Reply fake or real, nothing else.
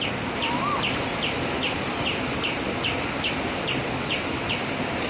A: real